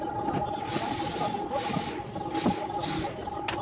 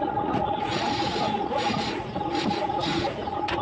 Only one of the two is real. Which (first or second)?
first